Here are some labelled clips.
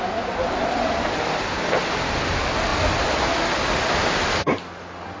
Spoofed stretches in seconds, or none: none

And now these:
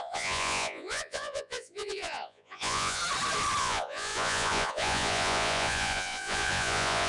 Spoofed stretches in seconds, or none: 0.0-3.0 (vocoder, Vocos); 3.6-7.1

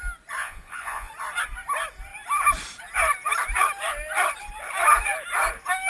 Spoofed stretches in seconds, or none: 0.4-1.1 (vocoder, Vocos)

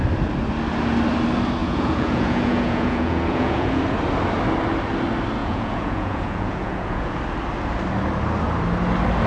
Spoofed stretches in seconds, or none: 1.6-3.8 (vocoder, Vocos); 5.4-7.2

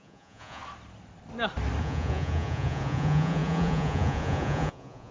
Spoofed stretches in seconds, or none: 0.0-0.6 (vocoder, Vocos); 1.8-5.1

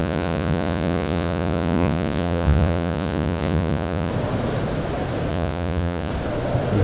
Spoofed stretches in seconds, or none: 0.0-4.1 (vocoder, Vocos); 5.3-6.1